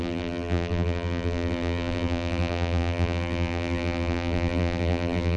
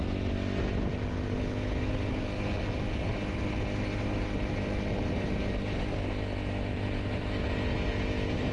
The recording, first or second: second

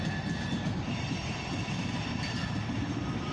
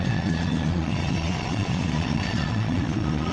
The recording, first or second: first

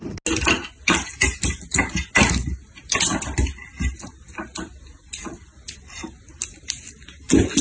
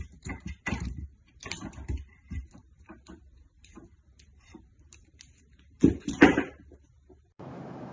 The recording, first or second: first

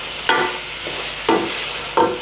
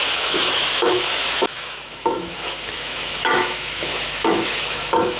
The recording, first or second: first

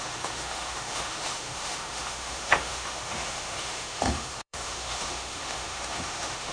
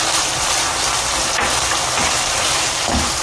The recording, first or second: second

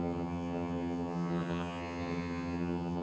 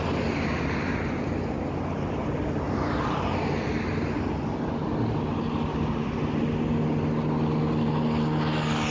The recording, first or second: second